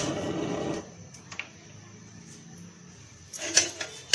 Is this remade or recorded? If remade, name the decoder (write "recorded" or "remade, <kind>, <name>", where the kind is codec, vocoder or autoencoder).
recorded